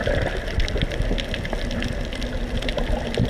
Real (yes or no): yes